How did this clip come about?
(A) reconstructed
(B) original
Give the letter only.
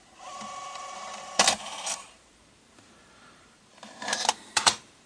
A